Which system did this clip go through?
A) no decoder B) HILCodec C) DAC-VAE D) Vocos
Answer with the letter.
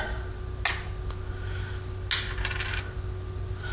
A